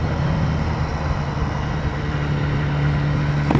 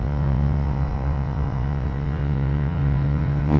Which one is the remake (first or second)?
second